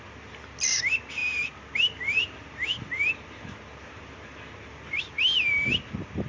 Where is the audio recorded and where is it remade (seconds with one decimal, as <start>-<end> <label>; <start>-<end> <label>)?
0.0-6.3 recorded